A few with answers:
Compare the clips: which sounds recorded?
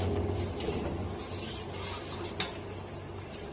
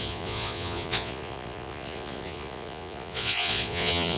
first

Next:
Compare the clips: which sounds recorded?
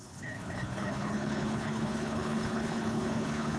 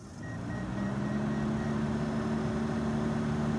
second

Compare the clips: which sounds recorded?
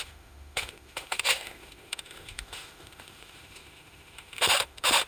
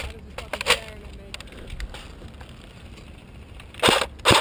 second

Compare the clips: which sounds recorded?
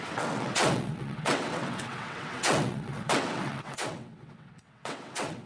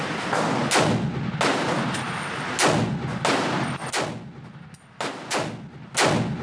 second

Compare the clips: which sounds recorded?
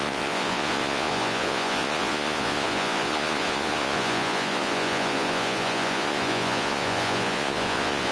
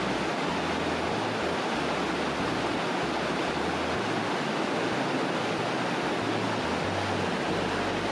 second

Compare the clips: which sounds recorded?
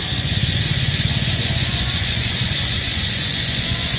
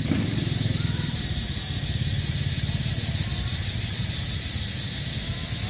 second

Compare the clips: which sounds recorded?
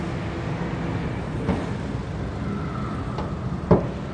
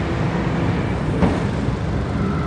first